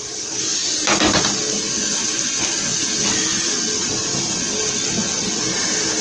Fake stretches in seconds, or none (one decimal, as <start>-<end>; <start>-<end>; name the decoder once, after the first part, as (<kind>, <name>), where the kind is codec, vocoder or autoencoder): none